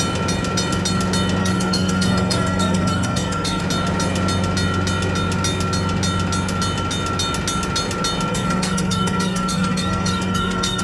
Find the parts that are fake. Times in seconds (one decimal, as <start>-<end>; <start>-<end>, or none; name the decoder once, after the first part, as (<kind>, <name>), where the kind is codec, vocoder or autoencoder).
1.4-3.6 (codec, SNAC); 8.3-10.8